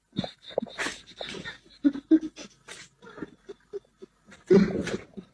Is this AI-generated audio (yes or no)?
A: no